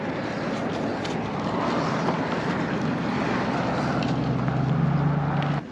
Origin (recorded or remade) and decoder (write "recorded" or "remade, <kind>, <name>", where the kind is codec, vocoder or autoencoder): recorded